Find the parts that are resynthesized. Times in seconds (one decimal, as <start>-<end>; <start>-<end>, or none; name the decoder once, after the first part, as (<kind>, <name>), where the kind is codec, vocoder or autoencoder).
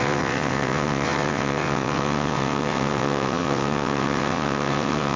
0.0-5.2 (vocoder, WaveNeXt)